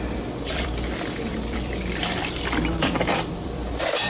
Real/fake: fake